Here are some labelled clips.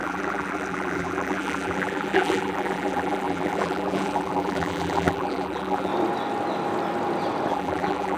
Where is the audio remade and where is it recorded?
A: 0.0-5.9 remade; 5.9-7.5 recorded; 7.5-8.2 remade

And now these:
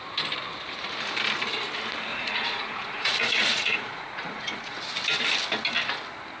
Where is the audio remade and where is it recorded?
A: 0.0-2.1 recorded; 2.1-4.8 remade; 4.8-6.4 recorded

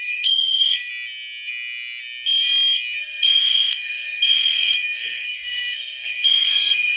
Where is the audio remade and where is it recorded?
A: 0.0-0.9 remade; 0.9-3.0 recorded; 3.0-7.0 remade

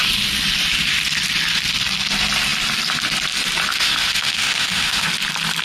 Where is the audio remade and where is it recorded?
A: 0.0-3.7 recorded; 3.7-5.1 remade; 5.1-5.6 recorded

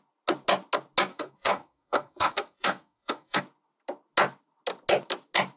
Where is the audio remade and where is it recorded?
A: 0.0-1.1 recorded; 1.1-3.4 remade; 3.4-5.6 recorded

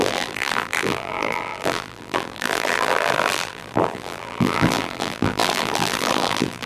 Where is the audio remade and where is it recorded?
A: 0.0-6.7 remade

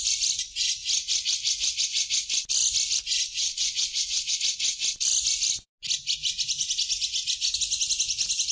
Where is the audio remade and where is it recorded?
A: 0.0-3.3 recorded; 3.3-4.4 remade; 4.4-8.5 recorded

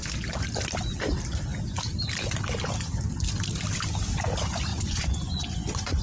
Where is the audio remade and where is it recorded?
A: 0.0-4.7 recorded; 4.7-6.0 remade